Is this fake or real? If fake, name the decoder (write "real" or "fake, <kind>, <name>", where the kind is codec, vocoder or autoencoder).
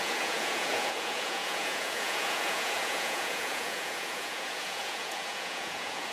fake, vocoder, Vocos